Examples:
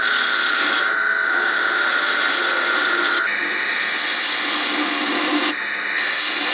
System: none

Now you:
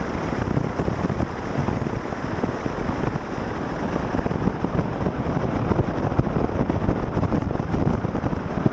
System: none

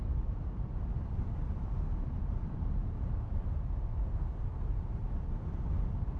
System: none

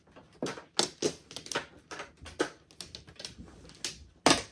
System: none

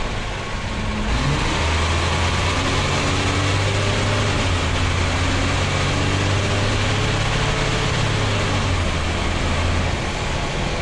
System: none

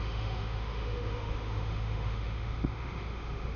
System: autoencoder, DAC-VAE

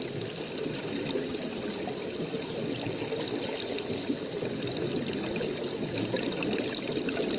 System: none